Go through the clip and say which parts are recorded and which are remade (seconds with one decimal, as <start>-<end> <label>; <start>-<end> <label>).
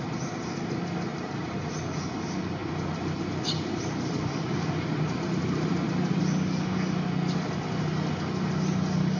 0.0-1.1 recorded; 1.1-1.7 remade; 1.7-2.6 recorded; 2.6-3.2 remade; 3.2-3.7 recorded; 3.7-6.2 remade; 6.2-9.2 recorded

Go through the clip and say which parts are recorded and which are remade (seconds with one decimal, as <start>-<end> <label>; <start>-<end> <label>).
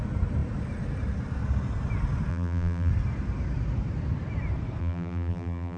0.0-2.3 recorded; 2.3-2.9 remade; 2.9-4.8 recorded; 4.8-5.8 remade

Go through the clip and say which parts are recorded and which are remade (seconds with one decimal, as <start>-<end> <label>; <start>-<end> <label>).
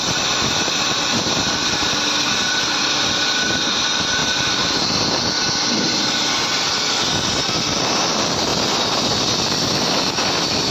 0.0-4.2 recorded; 4.2-4.9 remade; 4.9-10.7 recorded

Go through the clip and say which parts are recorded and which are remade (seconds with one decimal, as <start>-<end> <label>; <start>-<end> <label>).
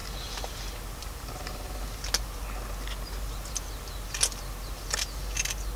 0.0-5.8 recorded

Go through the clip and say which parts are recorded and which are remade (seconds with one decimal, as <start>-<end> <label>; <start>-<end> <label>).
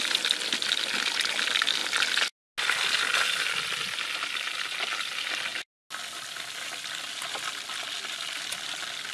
0.0-9.1 recorded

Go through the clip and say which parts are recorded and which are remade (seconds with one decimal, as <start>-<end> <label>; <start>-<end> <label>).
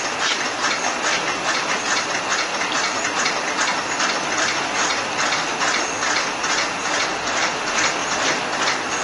0.0-7.1 recorded; 7.1-7.6 remade; 7.6-9.0 recorded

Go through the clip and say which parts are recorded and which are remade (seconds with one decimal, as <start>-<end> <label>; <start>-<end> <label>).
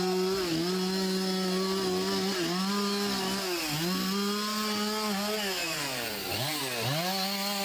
0.0-5.6 recorded; 5.6-6.6 remade; 6.6-7.6 recorded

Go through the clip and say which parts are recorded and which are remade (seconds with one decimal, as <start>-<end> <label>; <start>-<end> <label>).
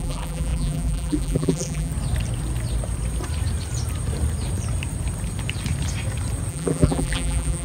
0.0-1.9 remade; 1.9-6.5 recorded; 6.5-7.6 remade